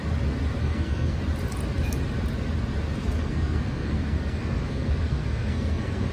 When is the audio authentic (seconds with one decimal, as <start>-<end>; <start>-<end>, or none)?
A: 0.0-0.6; 1.2-3.0